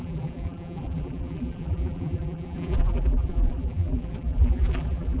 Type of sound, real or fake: fake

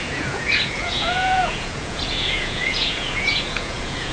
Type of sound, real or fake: fake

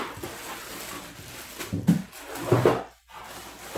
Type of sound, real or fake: real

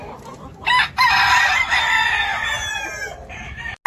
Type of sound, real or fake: real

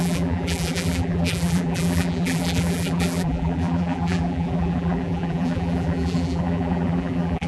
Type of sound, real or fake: fake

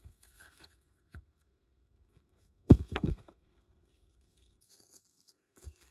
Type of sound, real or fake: fake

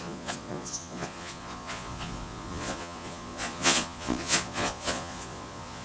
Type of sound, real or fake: fake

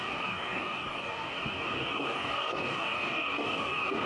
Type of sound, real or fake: fake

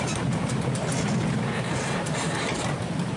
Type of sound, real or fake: real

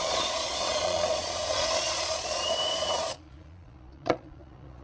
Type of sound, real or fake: fake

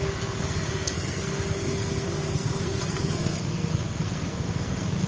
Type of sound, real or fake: fake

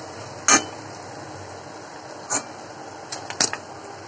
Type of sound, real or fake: real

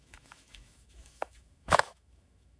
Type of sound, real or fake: fake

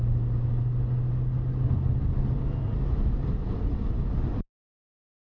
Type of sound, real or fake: real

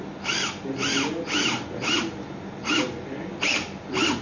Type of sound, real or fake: real